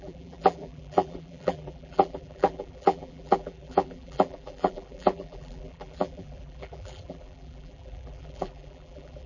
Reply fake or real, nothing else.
fake